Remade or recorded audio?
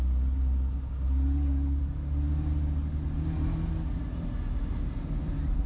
recorded